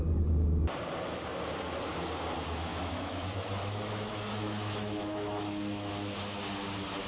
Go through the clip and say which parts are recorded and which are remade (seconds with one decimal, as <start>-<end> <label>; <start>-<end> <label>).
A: 0.0-2.7 recorded; 2.7-5.9 remade; 5.9-7.1 recorded